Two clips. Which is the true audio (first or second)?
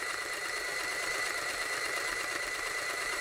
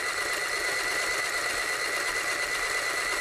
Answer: second